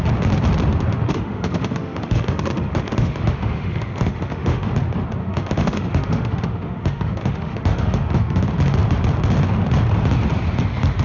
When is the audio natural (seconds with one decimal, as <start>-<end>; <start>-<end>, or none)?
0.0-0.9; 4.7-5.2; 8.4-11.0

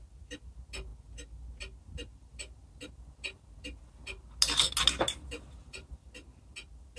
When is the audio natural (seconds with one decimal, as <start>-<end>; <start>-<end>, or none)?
0.0-7.0

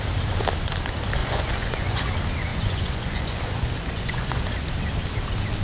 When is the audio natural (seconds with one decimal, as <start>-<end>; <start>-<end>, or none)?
0.0-1.2; 2.1-2.5; 4.4-5.6

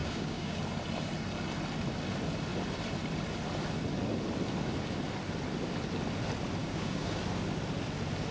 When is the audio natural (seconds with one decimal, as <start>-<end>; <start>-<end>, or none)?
0.6-6.6; 7.2-8.3

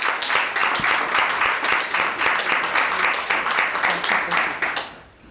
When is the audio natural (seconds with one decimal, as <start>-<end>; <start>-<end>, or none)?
0.0-5.3